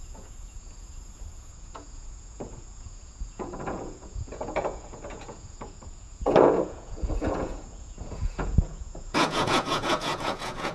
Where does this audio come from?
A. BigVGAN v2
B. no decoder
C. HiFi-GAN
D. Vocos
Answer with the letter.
D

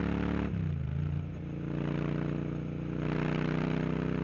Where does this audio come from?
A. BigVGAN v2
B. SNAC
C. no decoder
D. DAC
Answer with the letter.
C